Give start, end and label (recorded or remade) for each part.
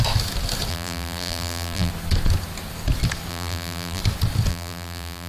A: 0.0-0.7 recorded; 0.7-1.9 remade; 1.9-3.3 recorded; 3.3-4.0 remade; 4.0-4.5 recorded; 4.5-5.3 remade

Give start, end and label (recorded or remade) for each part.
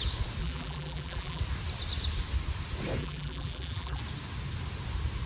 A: 0.0-0.4 recorded; 0.4-1.4 remade; 1.4-3.0 recorded; 3.0-4.0 remade; 4.0-5.3 recorded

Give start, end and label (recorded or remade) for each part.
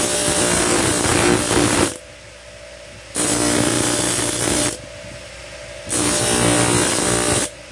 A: 0.0-7.7 recorded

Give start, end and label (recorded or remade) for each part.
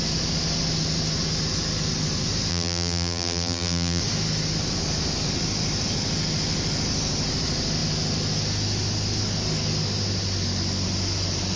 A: 0.0-2.5 recorded; 2.5-4.0 remade; 4.0-11.6 recorded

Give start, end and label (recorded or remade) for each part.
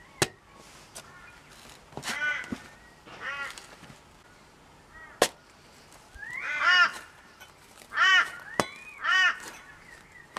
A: 0.0-6.9 recorded; 6.9-7.9 remade; 7.9-9.1 recorded; 9.1-9.7 remade; 9.7-10.4 recorded